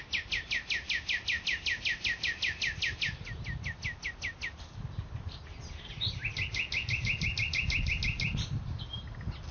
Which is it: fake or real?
real